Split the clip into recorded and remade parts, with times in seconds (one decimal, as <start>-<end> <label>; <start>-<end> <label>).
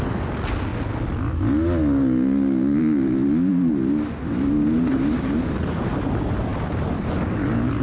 0.0-7.8 recorded